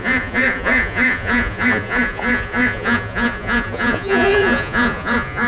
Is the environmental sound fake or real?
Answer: fake